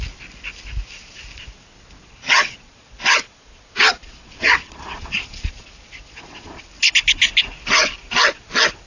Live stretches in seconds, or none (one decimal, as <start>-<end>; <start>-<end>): 0.0-2.2; 6.6-8.9

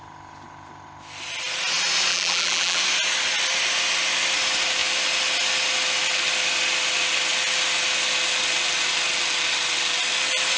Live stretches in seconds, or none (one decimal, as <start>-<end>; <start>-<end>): 0.0-2.1; 2.8-10.6

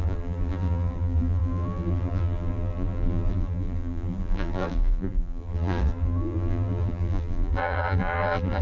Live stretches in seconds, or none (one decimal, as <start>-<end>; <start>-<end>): none

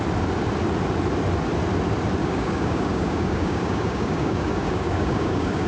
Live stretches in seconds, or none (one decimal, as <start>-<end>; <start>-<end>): 0.0-2.2

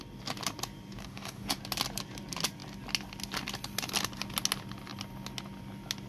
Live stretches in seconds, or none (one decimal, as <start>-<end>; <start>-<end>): 0.0-1.0; 1.6-6.1

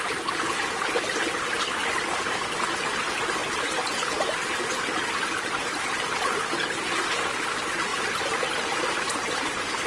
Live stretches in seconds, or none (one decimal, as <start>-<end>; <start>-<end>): 0.0-9.9

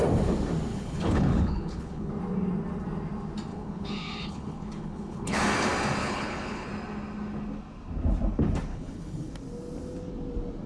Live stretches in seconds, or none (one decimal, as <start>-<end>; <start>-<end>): 0.0-0.7; 2.1-3.5; 5.4-6.0; 6.7-8.7; 9.3-10.7

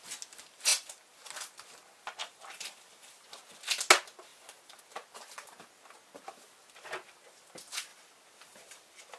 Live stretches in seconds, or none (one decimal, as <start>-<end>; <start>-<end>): 0.0-2.2; 3.3-4.3; 4.8-7.9